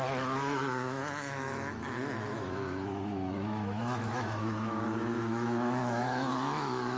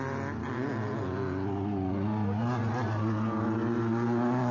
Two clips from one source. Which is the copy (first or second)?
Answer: first